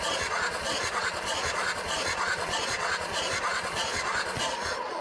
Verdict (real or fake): fake